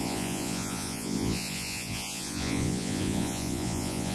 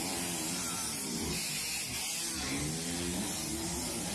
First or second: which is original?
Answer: second